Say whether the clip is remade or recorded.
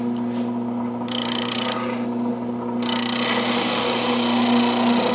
recorded